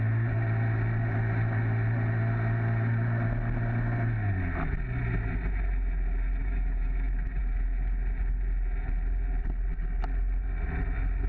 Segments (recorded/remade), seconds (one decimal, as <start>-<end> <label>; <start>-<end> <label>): 0.0-6.4 recorded; 6.4-7.4 remade; 7.4-11.3 recorded

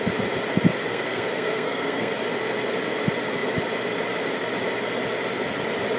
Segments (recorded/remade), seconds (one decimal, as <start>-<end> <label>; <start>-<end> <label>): 0.0-0.9 recorded; 0.9-2.1 remade; 2.1-6.0 recorded

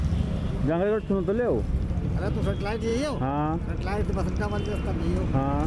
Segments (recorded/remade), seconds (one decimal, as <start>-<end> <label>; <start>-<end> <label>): 0.0-5.7 recorded

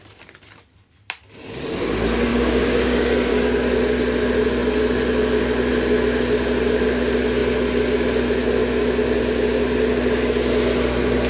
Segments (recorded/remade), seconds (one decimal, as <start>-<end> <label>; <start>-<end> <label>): 0.0-2.3 recorded; 2.3-3.3 remade; 3.3-11.3 recorded

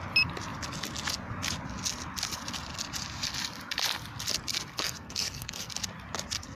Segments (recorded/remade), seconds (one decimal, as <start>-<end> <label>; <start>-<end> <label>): 0.0-4.7 recorded; 4.7-5.7 remade; 5.7-6.5 recorded

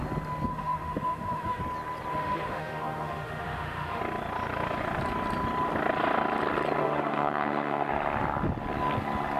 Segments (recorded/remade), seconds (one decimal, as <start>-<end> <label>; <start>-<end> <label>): 0.0-0.5 recorded; 0.5-1.6 remade; 1.6-2.1 recorded; 2.1-4.0 remade; 4.0-6.8 recorded; 6.8-7.9 remade; 7.9-9.4 recorded